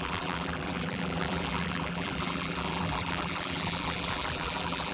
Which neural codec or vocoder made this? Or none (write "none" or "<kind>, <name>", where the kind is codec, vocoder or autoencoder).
vocoder, BigVGAN v2